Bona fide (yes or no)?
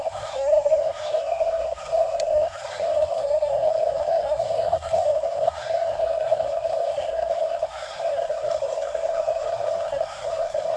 no